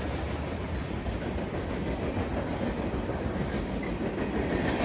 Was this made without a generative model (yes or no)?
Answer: yes